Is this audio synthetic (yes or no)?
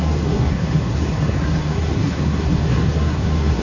yes